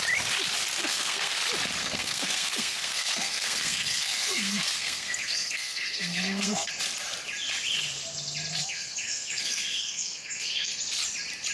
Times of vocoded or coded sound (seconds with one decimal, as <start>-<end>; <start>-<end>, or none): 0.8-1.4; 1.8-6.7; 8.6-10.7